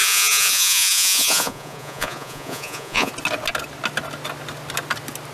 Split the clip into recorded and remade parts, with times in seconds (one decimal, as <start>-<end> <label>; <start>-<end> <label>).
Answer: 0.0-3.1 remade; 3.1-5.3 recorded